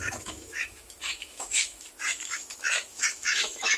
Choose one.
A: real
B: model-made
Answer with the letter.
B